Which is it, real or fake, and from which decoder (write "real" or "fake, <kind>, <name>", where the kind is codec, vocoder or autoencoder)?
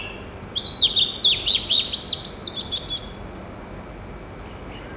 real